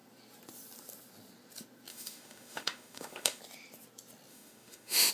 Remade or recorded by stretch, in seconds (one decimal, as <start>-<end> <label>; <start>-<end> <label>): 0.0-1.9 recorded; 1.9-3.4 remade; 3.4-4.3 recorded; 4.3-5.1 remade